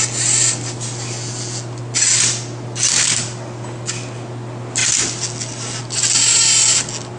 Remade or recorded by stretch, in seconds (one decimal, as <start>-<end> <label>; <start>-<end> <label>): 0.0-7.2 recorded

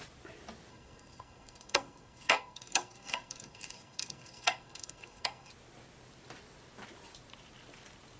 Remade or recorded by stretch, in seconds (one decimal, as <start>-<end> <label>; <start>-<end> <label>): 0.0-0.7 recorded; 0.7-5.5 remade; 5.5-8.2 recorded

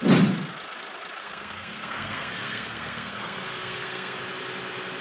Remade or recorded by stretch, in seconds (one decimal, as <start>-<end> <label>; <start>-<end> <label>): 0.0-1.2 recorded; 1.2-4.2 remade; 4.2-5.0 recorded

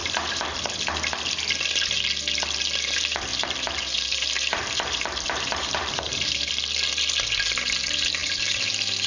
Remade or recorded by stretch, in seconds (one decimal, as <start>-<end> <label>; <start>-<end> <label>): 0.0-0.6 remade; 0.6-3.3 recorded; 3.3-6.5 remade; 6.5-8.2 recorded; 8.2-9.1 remade

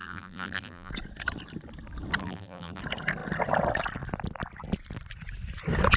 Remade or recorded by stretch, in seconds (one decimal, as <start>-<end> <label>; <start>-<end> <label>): 0.0-0.9 remade; 0.9-2.2 recorded; 2.2-2.8 remade; 2.8-6.0 recorded

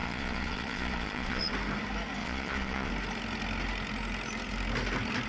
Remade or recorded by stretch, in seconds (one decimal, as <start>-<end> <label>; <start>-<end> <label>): 0.0-1.5 remade; 1.5-2.2 recorded; 2.2-2.9 remade; 2.9-5.3 recorded

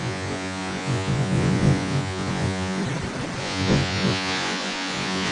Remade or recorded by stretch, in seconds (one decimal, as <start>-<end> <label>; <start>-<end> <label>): 0.0-2.8 remade; 2.8-3.4 recorded; 3.4-5.3 remade

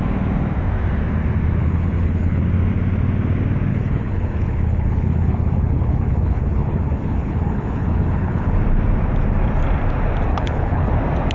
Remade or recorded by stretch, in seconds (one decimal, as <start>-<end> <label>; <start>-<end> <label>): 0.0-1.6 recorded; 1.6-2.4 remade; 2.4-3.7 recorded; 3.7-8.6 remade; 8.6-10.3 recorded; 10.3-10.9 remade; 10.9-11.3 recorded